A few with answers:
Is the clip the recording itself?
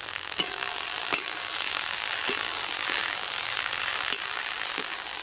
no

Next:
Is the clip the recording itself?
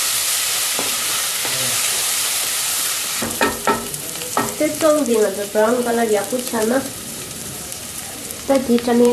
no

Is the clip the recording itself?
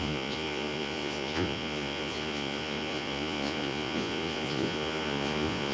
no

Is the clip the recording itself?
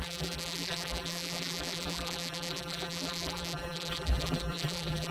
no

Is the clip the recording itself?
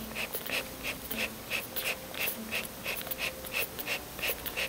yes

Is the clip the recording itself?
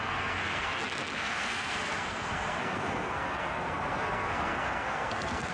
no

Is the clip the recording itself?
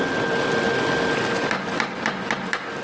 yes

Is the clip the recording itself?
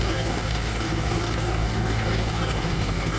no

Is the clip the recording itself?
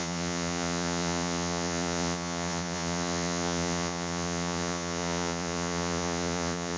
no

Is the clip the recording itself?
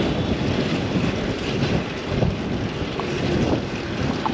yes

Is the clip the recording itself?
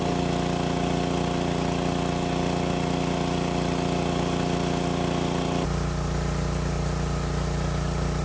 yes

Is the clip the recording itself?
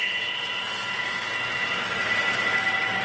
yes